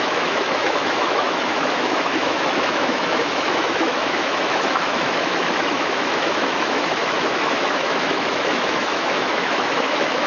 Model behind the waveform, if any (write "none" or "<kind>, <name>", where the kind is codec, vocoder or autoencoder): autoencoder, DAC-VAE